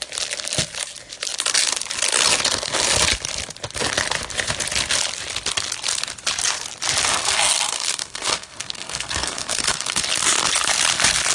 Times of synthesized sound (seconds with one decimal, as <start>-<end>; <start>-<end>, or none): 7.1-10.0